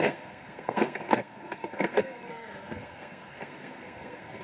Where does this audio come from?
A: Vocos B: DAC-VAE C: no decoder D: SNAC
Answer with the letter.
D